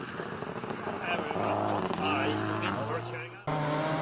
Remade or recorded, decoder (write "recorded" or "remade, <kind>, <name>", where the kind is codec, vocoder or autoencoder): recorded